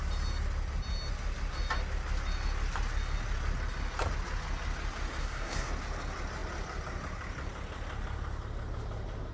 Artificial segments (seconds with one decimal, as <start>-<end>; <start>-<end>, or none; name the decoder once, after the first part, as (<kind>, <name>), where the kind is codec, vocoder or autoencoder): 5.2-5.7 (codec, SNAC)